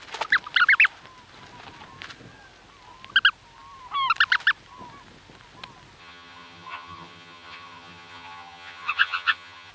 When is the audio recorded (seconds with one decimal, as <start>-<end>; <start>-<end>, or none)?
0.0-6.0